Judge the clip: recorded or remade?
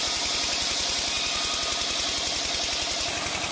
recorded